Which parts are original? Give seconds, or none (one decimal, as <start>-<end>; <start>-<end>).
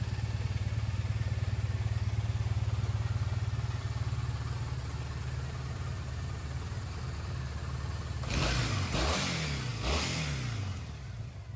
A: 0.0-11.6